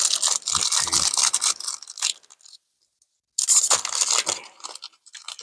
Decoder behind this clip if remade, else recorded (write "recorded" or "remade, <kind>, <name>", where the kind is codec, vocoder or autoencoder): recorded